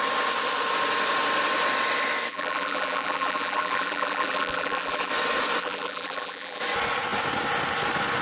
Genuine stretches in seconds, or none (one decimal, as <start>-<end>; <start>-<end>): 0.0-2.3; 5.1-5.6; 6.6-8.2